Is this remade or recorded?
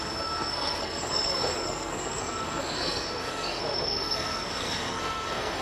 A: remade